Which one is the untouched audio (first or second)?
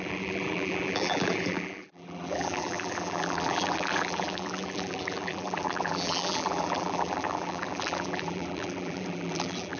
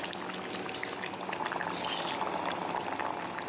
second